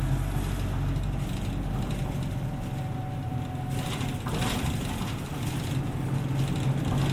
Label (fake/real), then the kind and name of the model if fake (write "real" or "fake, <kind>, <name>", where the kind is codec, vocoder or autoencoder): real